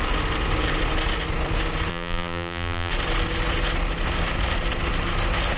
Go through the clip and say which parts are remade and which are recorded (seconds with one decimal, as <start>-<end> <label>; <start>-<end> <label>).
0.0-1.9 recorded; 1.9-2.9 remade; 2.9-5.6 recorded